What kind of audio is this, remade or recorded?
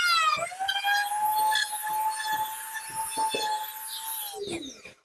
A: recorded